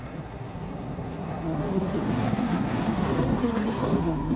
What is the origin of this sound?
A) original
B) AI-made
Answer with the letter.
B